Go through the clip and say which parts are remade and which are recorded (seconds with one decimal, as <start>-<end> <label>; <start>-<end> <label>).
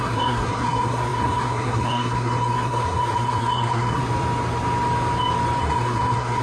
0.0-4.0 remade; 4.0-5.6 recorded; 5.6-6.4 remade